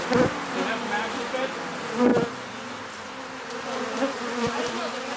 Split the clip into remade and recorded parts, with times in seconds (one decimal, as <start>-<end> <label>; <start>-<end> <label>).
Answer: 0.0-5.2 recorded